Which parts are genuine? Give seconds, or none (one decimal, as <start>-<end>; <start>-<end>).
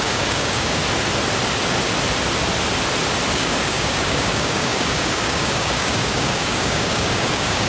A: 0.8-3.3